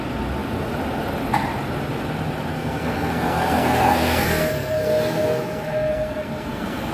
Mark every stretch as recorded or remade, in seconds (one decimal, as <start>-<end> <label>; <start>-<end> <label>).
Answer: 0.0-2.5 recorded; 2.5-6.9 remade